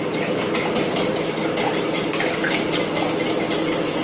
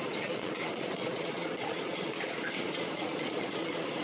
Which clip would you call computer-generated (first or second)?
second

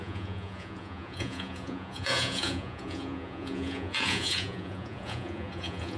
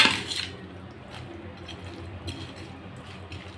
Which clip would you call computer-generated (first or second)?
first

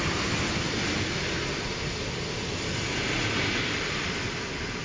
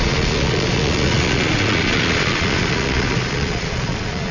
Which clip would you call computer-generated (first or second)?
second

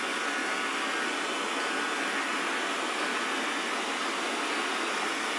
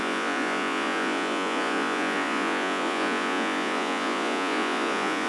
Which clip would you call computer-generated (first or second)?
second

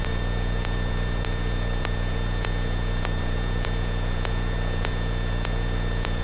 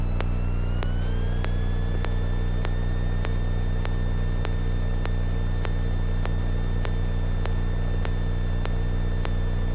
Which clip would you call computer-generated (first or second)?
first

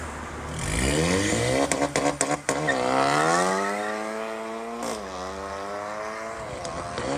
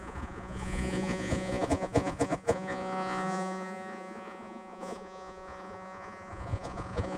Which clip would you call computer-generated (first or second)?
second